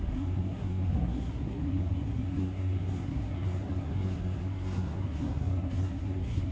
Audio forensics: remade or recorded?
remade